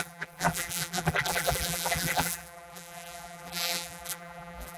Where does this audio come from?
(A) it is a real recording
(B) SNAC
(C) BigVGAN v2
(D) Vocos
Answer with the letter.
C